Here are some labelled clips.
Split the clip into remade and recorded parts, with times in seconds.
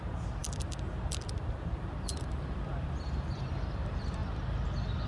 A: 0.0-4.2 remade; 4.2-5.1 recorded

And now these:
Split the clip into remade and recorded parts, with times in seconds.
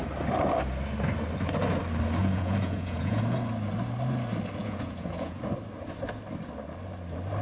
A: 0.0-2.2 recorded; 2.2-3.2 remade; 3.2-4.6 recorded; 4.6-5.4 remade; 5.4-7.4 recorded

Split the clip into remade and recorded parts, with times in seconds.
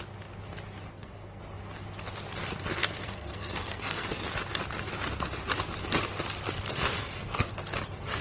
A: 0.0-0.9 recorded; 0.9-1.4 remade; 1.4-2.8 recorded; 2.8-4.1 remade; 4.1-6.7 recorded; 6.7-7.5 remade; 7.5-8.2 recorded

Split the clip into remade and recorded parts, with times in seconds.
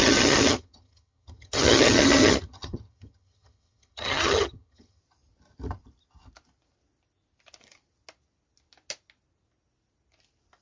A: 0.0-5.0 remade; 5.0-10.6 recorded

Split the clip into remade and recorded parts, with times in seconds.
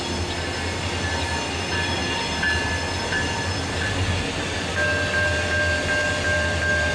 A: 0.0-6.9 recorded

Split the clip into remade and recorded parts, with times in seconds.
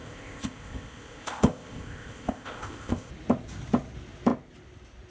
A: 0.0-3.1 remade; 3.1-5.1 recorded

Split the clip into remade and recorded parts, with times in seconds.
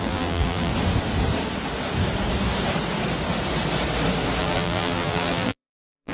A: 0.0-0.7 remade; 0.7-4.4 recorded; 4.4-6.1 remade